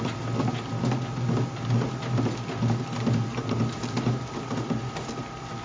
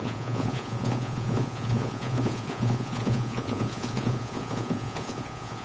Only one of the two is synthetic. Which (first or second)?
second